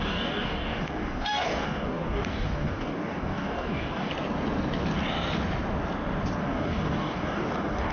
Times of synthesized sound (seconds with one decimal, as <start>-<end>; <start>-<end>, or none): 0.0-4.1; 6.4-7.9